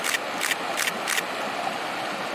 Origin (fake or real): real